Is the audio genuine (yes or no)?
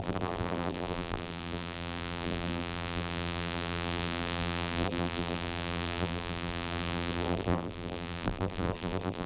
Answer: no